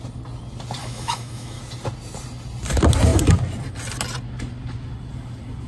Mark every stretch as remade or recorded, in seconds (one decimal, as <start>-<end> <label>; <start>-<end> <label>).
0.0-0.8 recorded; 0.8-1.6 remade; 1.6-5.7 recorded